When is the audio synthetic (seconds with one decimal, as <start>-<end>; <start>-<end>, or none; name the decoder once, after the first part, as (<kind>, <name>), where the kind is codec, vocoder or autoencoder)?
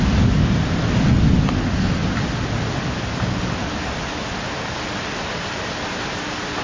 none